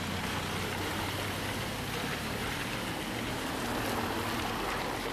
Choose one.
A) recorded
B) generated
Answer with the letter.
A